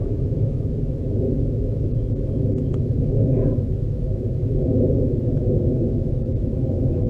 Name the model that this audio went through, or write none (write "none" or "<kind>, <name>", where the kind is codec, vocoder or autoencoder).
autoencoder, DAC-VAE